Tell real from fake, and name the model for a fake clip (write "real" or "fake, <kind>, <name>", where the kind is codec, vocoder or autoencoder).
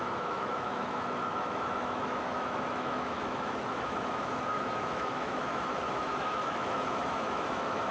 fake, autoencoder, DAC-VAE